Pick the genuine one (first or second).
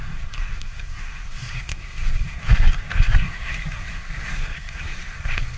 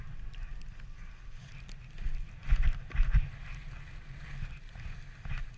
second